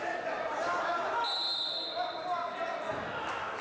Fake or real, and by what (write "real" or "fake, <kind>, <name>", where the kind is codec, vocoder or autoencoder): real